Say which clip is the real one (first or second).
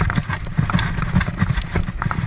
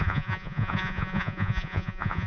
first